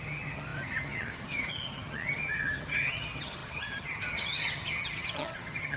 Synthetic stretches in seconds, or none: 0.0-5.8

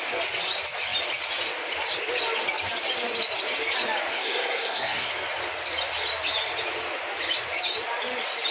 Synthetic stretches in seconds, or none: 4.1-5.1

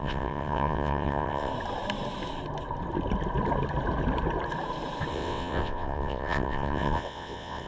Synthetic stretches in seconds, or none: 0.0-1.5; 5.1-7.7

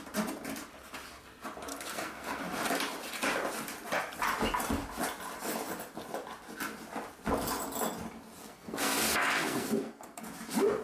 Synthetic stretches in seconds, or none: 1.7-2.4; 8.4-10.2

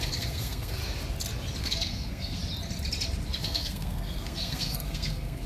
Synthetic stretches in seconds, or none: 0.0-0.8; 1.6-2.4; 3.4-5.5

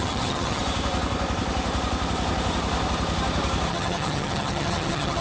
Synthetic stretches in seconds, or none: 0.0-0.6; 3.7-5.2

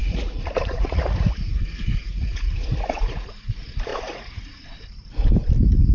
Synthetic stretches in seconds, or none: 0.0-1.6; 2.0-3.5; 3.9-4.8